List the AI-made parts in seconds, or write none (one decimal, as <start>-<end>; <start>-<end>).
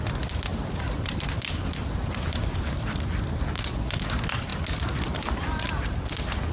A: 0.5-2.7